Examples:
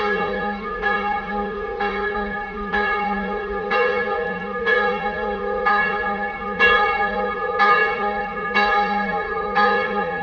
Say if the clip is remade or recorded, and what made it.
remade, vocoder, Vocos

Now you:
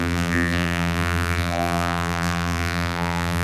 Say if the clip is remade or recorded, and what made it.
remade, vocoder, BigVGAN v2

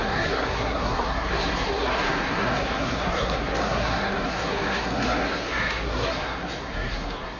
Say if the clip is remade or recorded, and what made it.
remade, codec, SNAC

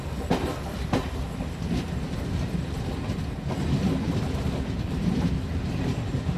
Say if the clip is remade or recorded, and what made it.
recorded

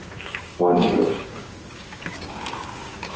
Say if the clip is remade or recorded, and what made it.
remade, codec, DAC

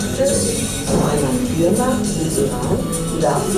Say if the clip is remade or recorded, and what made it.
recorded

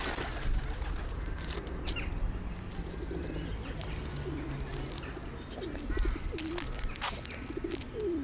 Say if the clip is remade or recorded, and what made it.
recorded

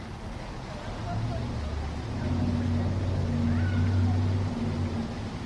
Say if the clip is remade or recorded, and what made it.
recorded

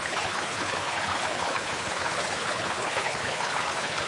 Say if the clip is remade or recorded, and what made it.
remade, codec, HILCodec